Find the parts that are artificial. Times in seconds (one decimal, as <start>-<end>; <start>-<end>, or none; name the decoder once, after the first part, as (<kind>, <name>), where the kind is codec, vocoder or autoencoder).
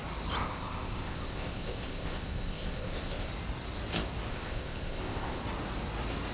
0.4-3.3 (codec, ZipCodec); 4.3-5.4